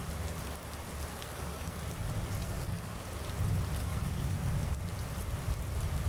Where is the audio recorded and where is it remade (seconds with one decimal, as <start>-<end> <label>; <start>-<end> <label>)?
0.0-1.1 recorded; 1.1-1.8 remade; 1.8-2.4 recorded; 2.4-3.0 remade; 3.0-3.8 recorded; 3.8-4.8 remade; 4.8-6.1 recorded

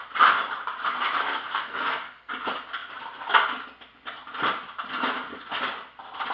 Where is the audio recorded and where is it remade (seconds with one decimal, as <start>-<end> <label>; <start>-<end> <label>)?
0.0-1.2 recorded; 1.2-2.3 remade; 2.3-6.3 recorded